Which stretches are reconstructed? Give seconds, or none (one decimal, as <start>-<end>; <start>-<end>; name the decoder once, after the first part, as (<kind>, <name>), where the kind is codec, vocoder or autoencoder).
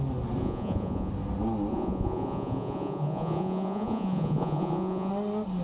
0.4-1.1 (vocoder, Vocos); 1.7-5.1